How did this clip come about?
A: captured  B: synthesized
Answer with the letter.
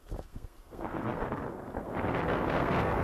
B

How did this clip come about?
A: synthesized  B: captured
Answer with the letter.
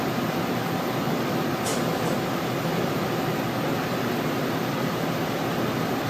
B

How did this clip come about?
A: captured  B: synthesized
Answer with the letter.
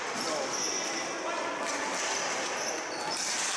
A